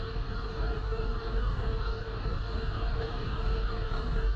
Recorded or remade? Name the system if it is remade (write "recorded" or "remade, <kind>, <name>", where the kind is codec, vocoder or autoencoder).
remade, codec, DAC